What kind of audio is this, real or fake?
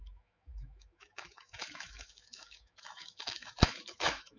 fake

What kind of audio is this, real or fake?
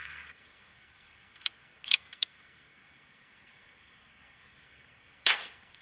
fake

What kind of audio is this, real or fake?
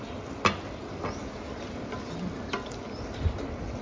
real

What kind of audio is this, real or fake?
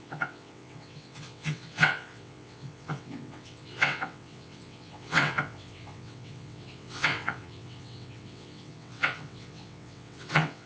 fake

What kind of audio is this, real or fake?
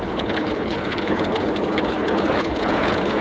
fake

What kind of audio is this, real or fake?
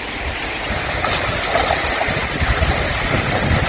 real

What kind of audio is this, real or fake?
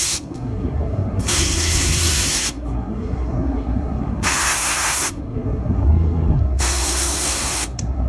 fake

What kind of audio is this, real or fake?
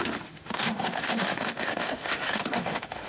fake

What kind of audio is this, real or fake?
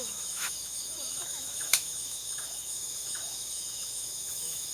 fake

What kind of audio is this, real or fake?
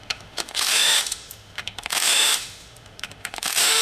fake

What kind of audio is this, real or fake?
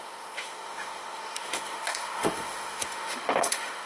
fake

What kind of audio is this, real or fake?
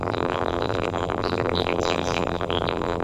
fake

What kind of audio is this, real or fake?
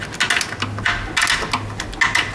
real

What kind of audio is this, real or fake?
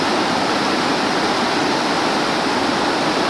real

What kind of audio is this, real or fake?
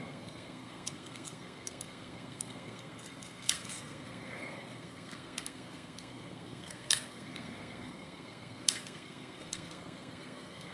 fake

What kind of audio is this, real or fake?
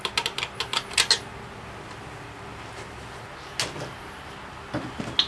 real